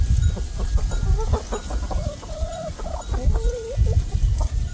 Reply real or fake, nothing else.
real